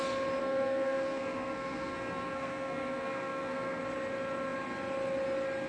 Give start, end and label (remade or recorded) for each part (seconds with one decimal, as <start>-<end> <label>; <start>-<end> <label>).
0.0-0.4 recorded; 0.4-3.8 remade; 3.8-5.7 recorded